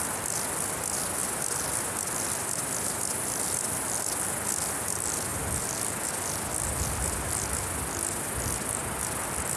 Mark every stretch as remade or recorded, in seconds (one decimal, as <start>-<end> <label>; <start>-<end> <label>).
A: 0.0-9.6 recorded

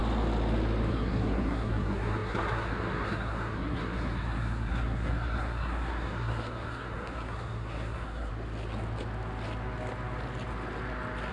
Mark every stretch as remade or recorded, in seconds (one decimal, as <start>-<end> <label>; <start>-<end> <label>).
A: 0.0-0.9 recorded; 0.9-8.3 remade; 8.3-11.3 recorded

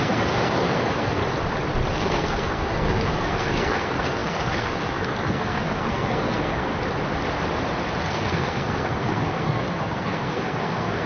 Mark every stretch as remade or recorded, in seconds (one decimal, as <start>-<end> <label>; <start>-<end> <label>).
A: 0.0-1.2 remade; 1.2-1.9 recorded; 1.9-6.7 remade; 6.7-8.0 recorded; 8.0-11.1 remade